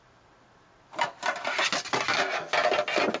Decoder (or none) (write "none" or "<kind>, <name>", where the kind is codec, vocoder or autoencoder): none